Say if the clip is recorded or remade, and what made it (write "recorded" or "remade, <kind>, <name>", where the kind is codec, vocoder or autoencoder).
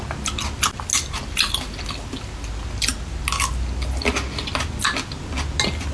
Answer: recorded